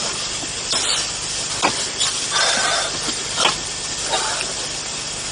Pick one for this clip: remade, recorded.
recorded